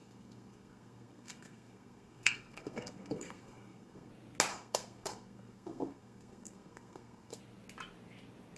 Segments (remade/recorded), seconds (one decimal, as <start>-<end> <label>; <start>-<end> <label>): 0.0-4.1 remade; 4.1-4.5 recorded; 4.5-7.4 remade; 7.4-8.6 recorded